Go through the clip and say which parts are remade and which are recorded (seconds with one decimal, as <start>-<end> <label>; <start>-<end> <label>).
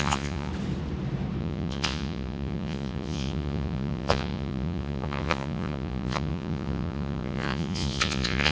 0.0-0.5 remade; 0.5-1.4 recorded; 1.4-8.5 remade